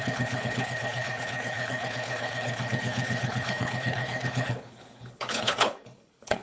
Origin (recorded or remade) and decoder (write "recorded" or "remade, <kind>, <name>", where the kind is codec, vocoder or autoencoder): remade, codec, HILCodec